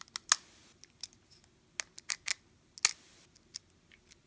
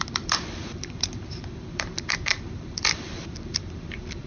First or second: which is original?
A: first